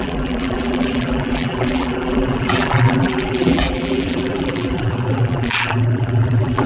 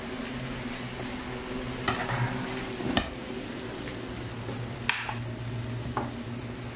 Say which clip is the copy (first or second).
first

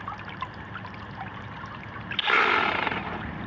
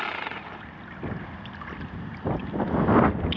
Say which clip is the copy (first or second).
first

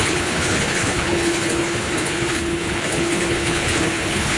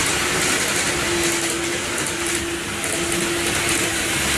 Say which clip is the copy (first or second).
first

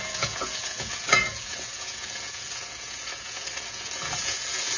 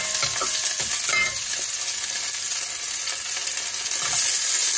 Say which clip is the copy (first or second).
first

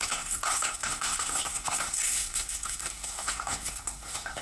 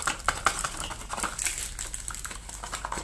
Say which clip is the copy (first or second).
first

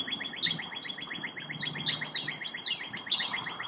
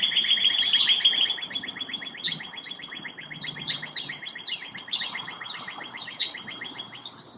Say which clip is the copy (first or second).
second